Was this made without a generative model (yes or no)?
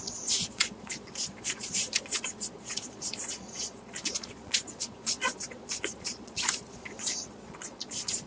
no